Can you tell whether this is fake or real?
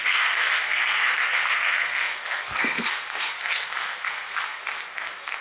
fake